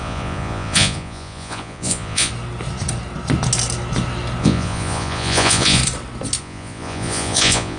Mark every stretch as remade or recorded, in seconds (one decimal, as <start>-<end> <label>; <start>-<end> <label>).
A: 0.0-2.3 remade; 2.3-4.4 recorded; 4.4-5.8 remade; 5.8-6.4 recorded; 6.4-7.8 remade